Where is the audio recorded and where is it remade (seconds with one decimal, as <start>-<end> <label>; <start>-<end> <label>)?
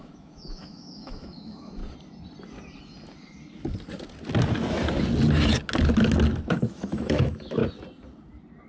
0.0-1.8 remade; 1.8-6.5 recorded; 6.5-7.6 remade; 7.6-8.7 recorded